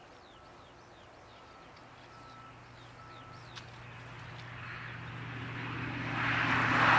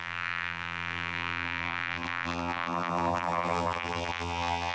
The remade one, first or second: second